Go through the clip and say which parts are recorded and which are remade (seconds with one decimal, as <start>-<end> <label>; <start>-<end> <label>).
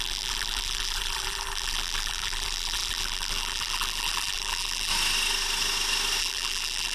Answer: 0.0-4.9 remade; 4.9-6.2 recorded; 6.2-6.9 remade